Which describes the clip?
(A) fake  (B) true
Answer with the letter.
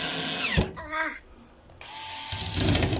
B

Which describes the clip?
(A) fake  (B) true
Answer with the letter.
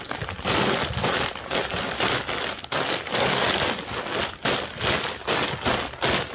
B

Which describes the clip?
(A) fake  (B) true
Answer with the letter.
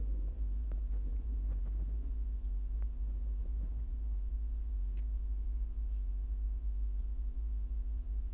A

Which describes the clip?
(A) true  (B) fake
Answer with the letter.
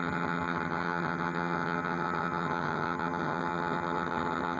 B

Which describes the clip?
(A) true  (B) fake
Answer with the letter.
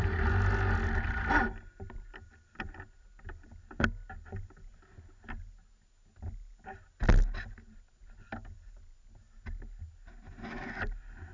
A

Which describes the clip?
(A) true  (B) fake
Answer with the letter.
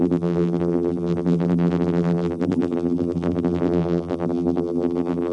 B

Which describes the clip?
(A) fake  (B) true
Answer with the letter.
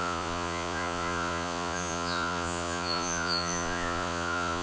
A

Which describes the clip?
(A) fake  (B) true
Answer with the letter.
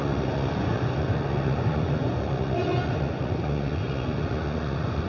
A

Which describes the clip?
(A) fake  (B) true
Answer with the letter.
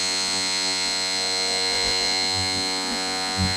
A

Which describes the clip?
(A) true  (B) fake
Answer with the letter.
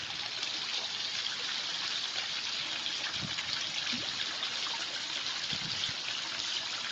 A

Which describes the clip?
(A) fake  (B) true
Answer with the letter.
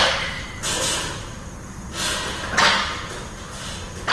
B